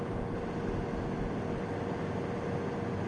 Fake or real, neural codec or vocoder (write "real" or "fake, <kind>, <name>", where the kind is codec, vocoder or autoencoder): real